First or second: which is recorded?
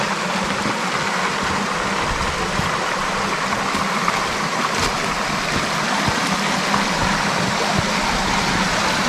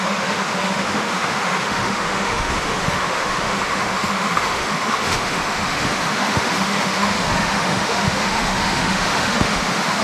first